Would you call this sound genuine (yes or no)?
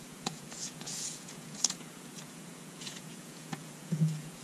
no